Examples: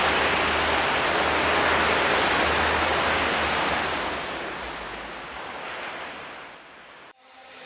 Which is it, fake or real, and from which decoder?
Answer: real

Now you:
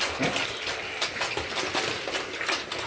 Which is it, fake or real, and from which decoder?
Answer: real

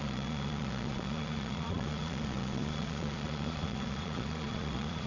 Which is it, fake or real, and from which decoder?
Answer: fake, vocoder, Vocos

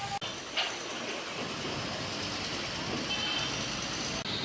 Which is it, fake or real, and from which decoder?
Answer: real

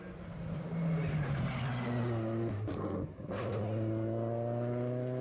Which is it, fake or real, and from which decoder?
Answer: real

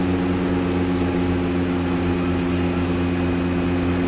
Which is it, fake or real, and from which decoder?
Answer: real